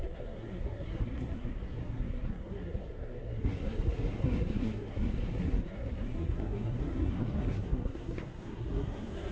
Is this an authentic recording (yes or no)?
no